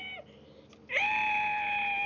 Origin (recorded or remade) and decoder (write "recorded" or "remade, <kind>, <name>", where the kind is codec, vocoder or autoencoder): recorded